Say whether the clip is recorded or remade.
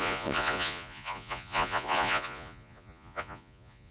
remade